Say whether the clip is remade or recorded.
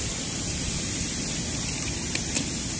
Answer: recorded